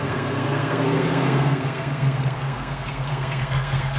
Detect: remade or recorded remade